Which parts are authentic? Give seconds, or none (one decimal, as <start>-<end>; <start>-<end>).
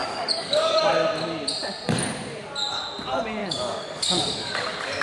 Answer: 0.8-3.4